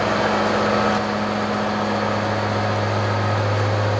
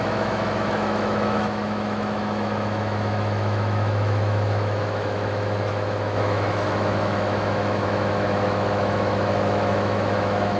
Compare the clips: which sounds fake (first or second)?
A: second